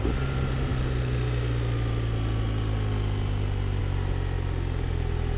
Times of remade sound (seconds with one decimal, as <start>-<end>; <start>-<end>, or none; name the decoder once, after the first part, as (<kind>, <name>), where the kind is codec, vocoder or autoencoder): none

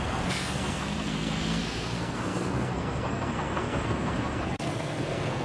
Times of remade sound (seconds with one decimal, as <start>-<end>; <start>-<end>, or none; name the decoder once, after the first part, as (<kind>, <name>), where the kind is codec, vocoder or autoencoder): 0.0-5.4 (codec, SNAC)

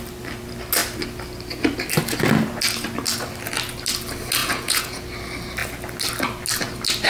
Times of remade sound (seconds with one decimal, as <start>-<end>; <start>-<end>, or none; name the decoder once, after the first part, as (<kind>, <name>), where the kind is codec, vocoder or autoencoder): 4.4-5.0 (vocoder, Vocos)

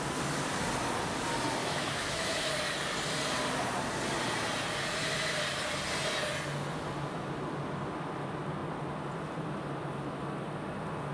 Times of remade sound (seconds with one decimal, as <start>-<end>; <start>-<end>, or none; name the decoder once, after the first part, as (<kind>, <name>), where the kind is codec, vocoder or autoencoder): 1.6-2.5 (autoencoder, DAC-VAE)

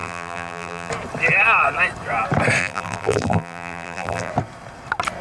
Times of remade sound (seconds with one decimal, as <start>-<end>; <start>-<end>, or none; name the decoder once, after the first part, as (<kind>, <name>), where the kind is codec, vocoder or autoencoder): 0.0-0.9 (vocoder, BigVGAN v2); 2.6-4.3

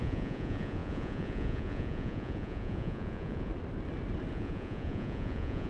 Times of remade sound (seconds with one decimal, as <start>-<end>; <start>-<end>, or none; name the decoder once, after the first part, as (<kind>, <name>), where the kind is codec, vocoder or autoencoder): 0.0-3.5 (vocoder, Vocos); 4.3-5.7

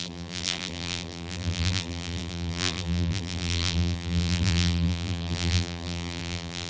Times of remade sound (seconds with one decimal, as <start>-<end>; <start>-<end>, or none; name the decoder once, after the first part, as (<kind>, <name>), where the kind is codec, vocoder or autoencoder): 0.0-6.7 (vocoder, BigVGAN v2)